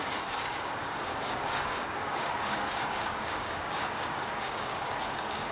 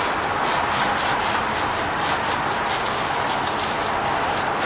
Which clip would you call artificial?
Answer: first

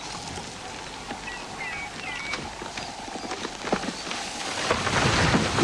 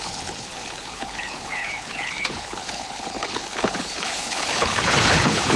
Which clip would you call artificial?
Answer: second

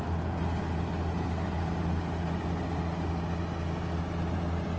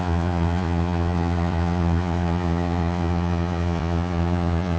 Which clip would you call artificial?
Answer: second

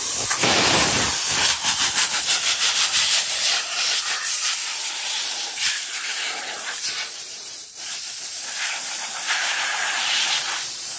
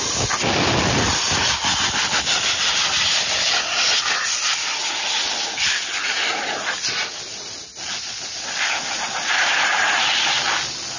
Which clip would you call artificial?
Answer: first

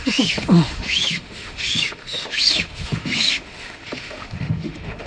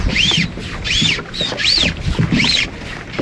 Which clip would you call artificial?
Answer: first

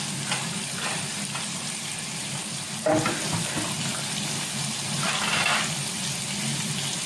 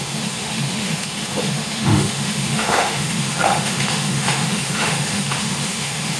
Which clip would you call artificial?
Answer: second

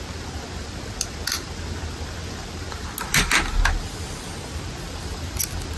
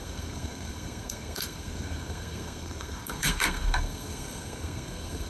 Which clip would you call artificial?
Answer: second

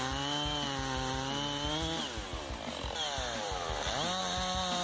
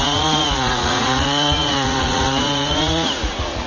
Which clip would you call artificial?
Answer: second